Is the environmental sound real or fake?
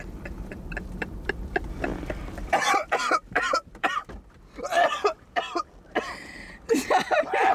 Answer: fake